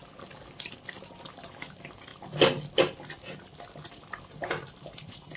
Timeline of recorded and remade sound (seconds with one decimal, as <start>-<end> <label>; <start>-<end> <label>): 0.0-1.0 recorded; 1.0-2.1 remade; 2.1-3.8 recorded; 3.8-5.4 remade

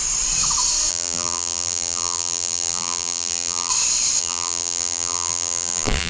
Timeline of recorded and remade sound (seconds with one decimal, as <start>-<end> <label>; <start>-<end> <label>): 0.0-0.9 recorded; 0.9-3.7 remade; 3.7-4.2 recorded; 4.2-6.1 remade

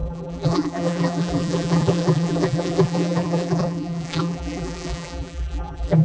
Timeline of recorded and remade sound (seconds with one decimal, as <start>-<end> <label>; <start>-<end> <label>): 0.0-6.0 remade

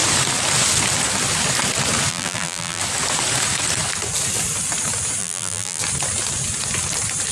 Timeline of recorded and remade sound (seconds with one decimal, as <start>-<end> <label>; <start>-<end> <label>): 0.0-2.1 recorded; 2.1-2.8 remade; 2.8-5.2 recorded; 5.2-5.8 remade; 5.8-7.3 recorded

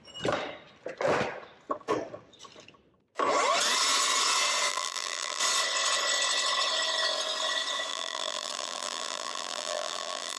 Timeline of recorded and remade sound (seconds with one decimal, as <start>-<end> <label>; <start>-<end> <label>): 0.0-4.7 recorded; 4.7-5.4 remade; 5.4-7.9 recorded; 7.9-10.4 remade

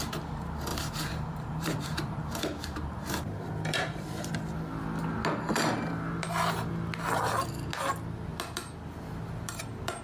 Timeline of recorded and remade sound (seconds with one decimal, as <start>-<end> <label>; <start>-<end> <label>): 0.0-0.7 recorded; 0.7-4.3 remade; 4.3-10.0 recorded

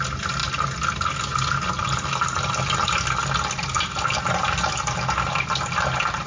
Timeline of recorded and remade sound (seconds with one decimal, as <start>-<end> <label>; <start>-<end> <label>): 0.0-6.3 recorded

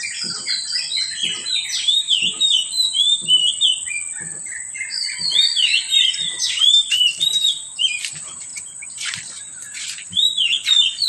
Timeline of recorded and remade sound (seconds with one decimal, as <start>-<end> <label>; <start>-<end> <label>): 0.0-2.6 remade; 2.6-4.4 recorded; 4.4-11.1 remade